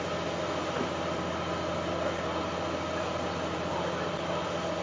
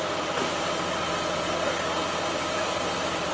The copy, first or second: second